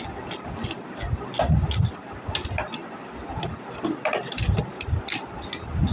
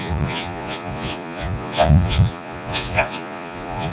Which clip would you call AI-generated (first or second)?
second